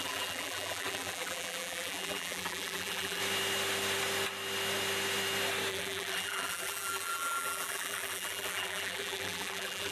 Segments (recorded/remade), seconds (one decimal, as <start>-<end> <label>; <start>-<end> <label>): 0.0-3.2 remade; 3.2-5.7 recorded; 5.7-9.9 remade